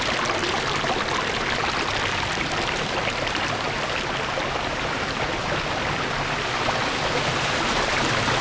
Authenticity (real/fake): real